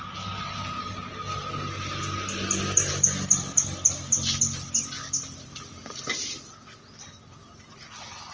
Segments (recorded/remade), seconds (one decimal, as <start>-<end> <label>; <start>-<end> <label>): 0.0-8.3 recorded